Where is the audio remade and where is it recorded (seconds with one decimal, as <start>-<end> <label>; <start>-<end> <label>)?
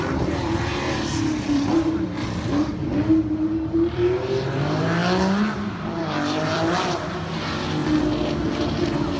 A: 0.0-5.0 remade; 5.0-5.8 recorded; 5.8-7.8 remade; 7.8-8.3 recorded; 8.3-9.2 remade